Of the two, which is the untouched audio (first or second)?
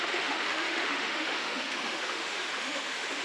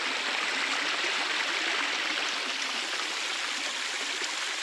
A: second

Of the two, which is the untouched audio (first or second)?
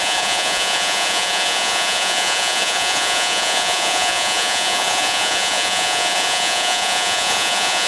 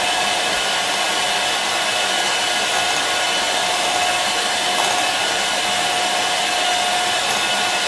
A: second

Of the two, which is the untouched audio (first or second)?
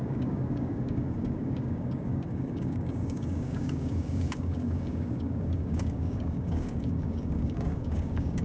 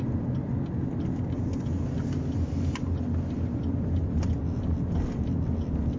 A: second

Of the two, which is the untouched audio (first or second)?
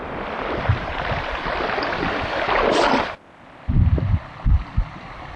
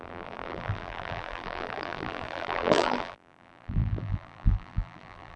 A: first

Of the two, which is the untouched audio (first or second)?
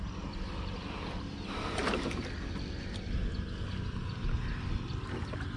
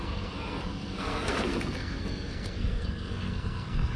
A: first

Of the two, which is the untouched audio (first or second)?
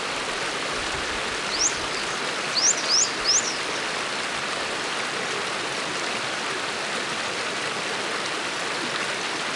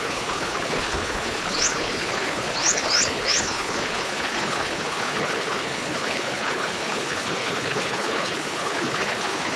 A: first